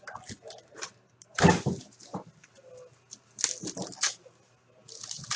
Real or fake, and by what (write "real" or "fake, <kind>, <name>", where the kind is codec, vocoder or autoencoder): real